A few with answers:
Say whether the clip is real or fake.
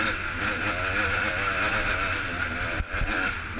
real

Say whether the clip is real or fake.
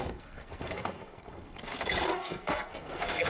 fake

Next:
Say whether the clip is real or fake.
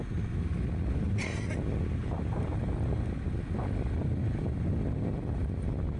real